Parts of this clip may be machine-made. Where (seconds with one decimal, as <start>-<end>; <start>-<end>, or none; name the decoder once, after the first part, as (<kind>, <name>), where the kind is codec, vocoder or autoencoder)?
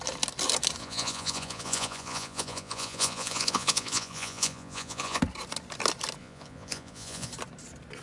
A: 0.8-5.2 (vocoder, Vocos); 6.2-7.3